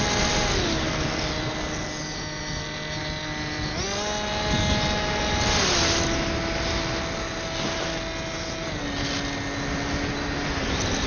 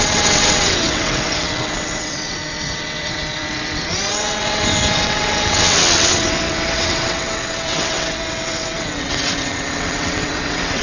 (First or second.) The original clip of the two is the first